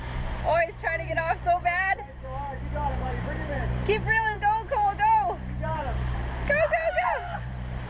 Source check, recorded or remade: remade